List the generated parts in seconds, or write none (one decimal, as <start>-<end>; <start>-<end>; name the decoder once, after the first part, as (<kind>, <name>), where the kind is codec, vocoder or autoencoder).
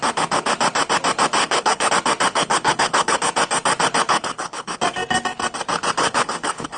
1.4-1.9 (codec, HILCodec); 2.3-3.2; 4.1-4.8; 6.0-6.8